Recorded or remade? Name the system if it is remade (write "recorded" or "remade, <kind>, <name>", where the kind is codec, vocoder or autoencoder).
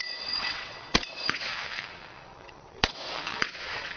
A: remade, vocoder, WaveNeXt